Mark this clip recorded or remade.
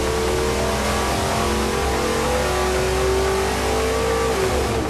recorded